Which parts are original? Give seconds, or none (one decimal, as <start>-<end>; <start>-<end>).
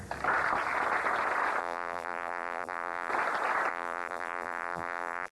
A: 0.0-1.6; 3.1-3.7